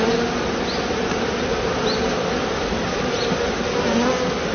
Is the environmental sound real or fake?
real